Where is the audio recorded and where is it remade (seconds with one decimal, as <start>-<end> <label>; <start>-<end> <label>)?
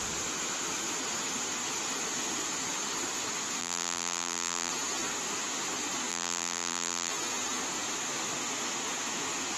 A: 0.0-3.6 recorded; 3.6-4.7 remade; 4.7-6.1 recorded; 6.1-7.1 remade; 7.1-9.6 recorded